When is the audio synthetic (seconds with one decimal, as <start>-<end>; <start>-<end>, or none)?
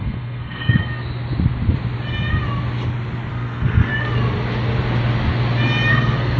0.0-0.8; 3.3-3.9; 5.9-6.4